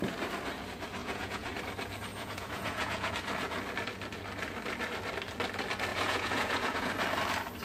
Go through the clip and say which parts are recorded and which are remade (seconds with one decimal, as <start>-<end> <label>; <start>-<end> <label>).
0.0-1.0 recorded; 1.0-1.5 remade; 1.5-2.1 recorded; 2.1-3.1 remade; 3.1-5.9 recorded; 5.9-6.9 remade; 6.9-7.6 recorded